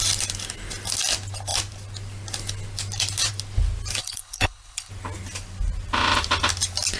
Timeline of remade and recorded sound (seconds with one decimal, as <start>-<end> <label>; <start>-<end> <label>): 0.0-4.0 recorded; 4.0-4.9 remade; 4.9-7.0 recorded